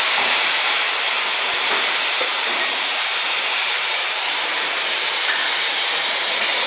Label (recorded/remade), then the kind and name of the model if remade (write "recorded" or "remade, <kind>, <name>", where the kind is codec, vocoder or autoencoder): remade, vocoder, BigVGAN v2